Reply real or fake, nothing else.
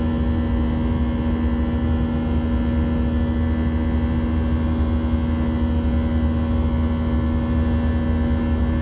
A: real